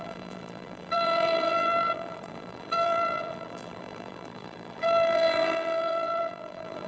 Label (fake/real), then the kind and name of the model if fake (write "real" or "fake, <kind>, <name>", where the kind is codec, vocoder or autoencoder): fake, vocoder, BigVGAN v2